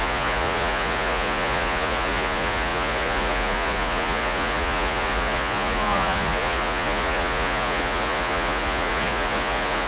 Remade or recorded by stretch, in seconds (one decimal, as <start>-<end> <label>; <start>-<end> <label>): 0.0-9.9 remade

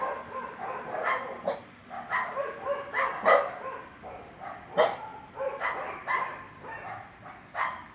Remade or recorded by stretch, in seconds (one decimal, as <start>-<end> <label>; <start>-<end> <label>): 0.0-7.9 recorded